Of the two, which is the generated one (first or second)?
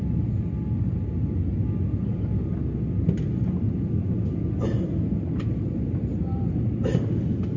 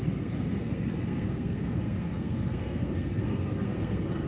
second